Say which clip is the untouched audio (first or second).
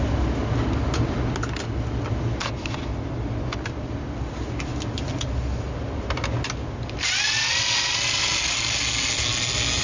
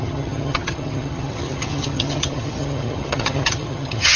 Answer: first